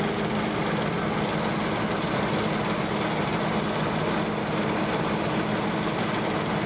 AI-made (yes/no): no